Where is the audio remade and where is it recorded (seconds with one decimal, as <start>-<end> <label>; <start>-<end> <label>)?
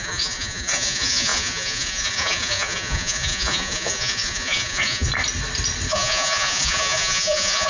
0.0-5.1 remade; 5.1-5.9 recorded; 5.9-7.7 remade